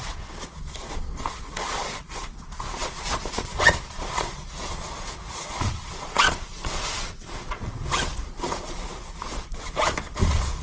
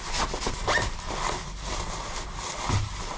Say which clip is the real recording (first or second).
second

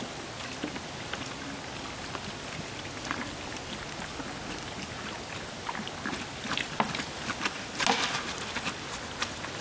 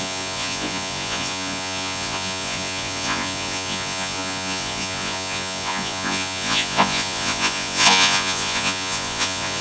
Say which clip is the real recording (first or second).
first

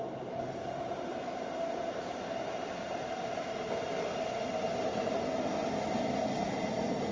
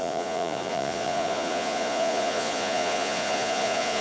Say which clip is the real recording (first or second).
first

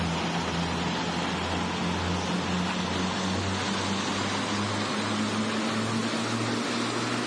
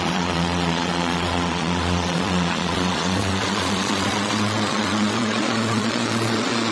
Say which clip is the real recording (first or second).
first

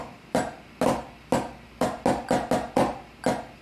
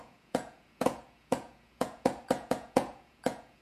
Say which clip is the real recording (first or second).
first